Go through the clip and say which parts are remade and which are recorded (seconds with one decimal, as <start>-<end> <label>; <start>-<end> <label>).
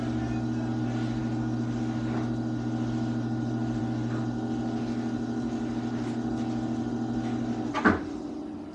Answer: 0.0-8.7 recorded